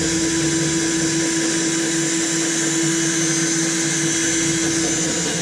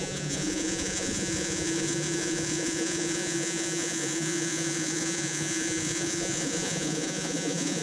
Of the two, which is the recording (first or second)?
first